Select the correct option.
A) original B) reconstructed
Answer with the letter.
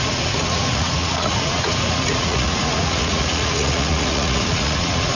B